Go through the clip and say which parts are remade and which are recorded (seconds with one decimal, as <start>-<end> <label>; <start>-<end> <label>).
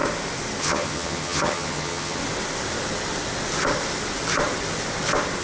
0.0-0.6 recorded; 0.6-2.2 remade; 2.2-5.4 recorded